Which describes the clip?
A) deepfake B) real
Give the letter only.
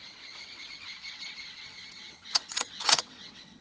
A